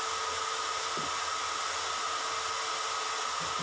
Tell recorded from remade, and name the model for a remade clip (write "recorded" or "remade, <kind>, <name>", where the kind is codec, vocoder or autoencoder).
recorded